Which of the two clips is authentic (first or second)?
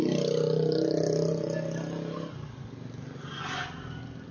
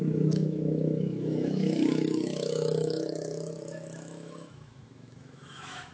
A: first